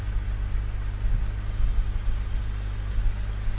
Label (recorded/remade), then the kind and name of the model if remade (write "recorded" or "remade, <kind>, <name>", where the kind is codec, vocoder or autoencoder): recorded